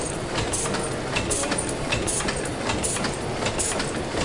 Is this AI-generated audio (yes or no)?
no